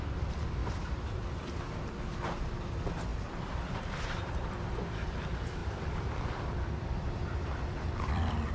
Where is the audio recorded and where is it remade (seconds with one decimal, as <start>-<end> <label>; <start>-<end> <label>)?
0.0-0.6 recorded; 0.6-1.9 remade; 1.9-3.1 recorded; 3.1-4.6 remade; 4.6-5.6 recorded; 5.6-8.5 remade